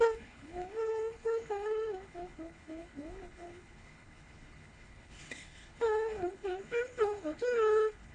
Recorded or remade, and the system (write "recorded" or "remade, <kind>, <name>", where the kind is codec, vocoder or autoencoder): remade, codec, HILCodec